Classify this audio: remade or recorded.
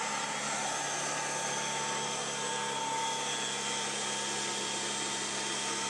recorded